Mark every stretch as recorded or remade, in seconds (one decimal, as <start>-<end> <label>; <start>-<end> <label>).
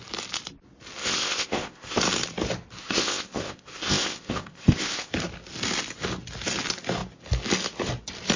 0.0-1.0 recorded; 1.0-2.0 remade; 2.0-2.8 recorded; 2.8-5.1 remade; 5.1-8.4 recorded